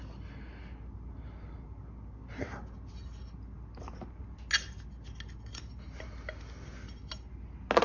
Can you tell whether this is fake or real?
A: real